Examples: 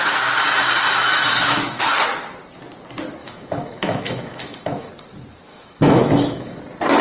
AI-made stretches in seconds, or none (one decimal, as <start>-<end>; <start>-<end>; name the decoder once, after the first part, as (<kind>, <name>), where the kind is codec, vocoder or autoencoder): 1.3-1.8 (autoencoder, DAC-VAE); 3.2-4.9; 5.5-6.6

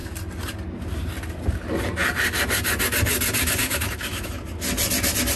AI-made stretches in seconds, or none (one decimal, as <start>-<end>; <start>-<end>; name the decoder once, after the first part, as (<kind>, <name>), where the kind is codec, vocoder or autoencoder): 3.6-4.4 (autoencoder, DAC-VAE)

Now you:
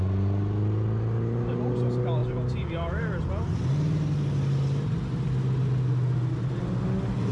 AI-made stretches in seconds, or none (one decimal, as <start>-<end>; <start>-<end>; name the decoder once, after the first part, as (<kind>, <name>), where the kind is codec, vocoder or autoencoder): none

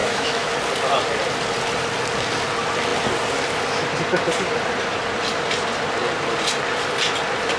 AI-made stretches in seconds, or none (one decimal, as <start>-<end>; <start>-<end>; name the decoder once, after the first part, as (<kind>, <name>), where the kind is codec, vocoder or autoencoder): 0.0-0.5 (autoencoder, DAC-VAE)

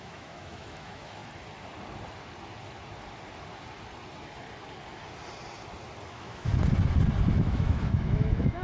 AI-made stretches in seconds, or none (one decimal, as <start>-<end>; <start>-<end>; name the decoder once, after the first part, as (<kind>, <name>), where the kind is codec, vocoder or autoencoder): 0.0-1.2 (autoencoder, DAC-VAE); 6.1-6.5; 7.2-8.6

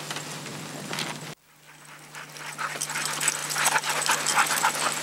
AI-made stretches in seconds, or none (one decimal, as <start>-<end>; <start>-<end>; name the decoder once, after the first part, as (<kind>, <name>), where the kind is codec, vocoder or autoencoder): none

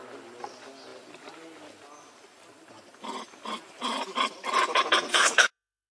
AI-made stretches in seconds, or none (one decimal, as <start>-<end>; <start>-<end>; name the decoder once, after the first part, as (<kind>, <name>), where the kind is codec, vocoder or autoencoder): 5.1-5.9 (autoencoder, DAC-VAE)